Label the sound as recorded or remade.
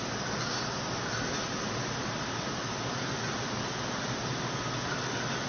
recorded